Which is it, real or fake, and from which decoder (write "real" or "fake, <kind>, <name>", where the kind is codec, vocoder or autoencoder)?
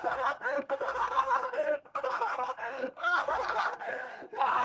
fake, codec, SNAC